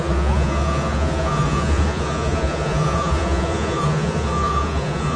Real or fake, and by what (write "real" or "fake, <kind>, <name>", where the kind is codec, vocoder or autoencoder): fake, vocoder, Vocos